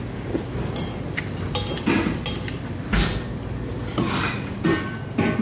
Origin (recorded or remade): recorded